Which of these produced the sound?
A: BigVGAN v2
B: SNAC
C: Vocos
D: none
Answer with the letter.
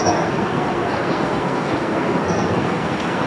B